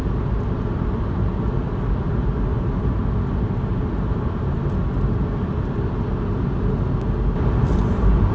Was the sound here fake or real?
real